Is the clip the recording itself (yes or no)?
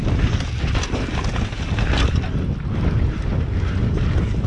yes